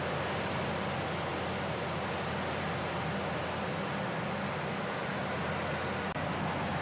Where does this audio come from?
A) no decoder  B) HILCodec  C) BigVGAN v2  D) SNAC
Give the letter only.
A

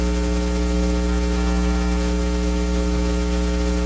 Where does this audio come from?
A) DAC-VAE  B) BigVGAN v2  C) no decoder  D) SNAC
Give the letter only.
C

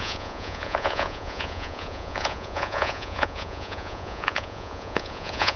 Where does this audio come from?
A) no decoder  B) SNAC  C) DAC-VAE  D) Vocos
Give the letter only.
D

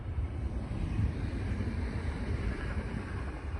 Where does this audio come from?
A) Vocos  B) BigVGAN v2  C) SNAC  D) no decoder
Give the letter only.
B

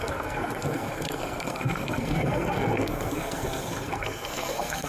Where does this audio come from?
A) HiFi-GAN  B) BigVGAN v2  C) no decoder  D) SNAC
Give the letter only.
D